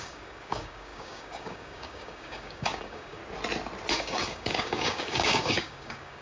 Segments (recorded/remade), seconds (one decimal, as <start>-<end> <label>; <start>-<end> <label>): 0.0-3.2 remade; 3.2-3.9 recorded; 3.9-6.2 remade